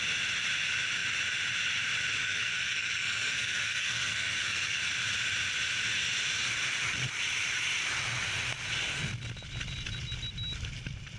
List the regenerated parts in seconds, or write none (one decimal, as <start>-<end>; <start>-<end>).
2.2-4.9